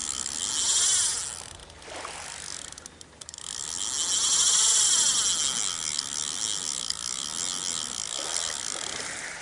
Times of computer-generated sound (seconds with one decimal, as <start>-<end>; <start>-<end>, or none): none